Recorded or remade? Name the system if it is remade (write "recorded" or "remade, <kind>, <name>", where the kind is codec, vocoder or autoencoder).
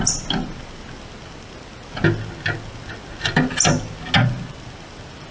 recorded